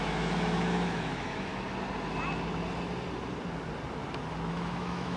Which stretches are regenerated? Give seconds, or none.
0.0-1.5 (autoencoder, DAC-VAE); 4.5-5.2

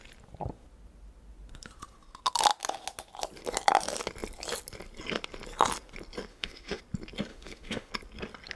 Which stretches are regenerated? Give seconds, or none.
6.3-6.8 (autoencoder, DAC-VAE); 7.3-7.9

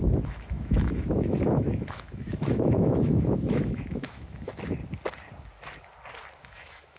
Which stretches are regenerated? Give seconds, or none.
0.0-4.5 (autoencoder, DAC-VAE); 6.4-7.0

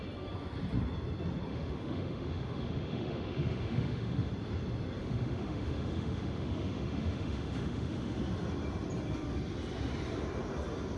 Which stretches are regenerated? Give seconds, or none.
1.5-4.3 (autoencoder, DAC-VAE); 5.0-8.2

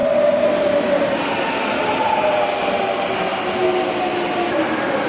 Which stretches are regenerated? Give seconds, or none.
none

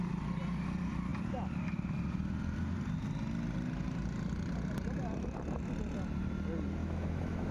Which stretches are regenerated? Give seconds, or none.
6.8-7.5 (autoencoder, DAC-VAE)